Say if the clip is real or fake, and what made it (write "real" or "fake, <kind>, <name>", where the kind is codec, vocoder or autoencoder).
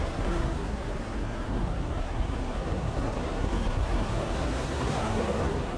fake, codec, SNAC